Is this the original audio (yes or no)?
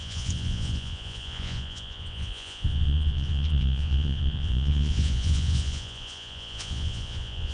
no